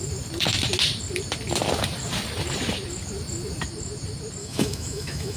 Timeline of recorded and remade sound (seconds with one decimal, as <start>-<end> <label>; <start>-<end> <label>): 0.0-4.4 recorded; 4.4-5.4 remade